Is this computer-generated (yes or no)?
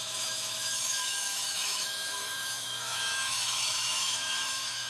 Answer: yes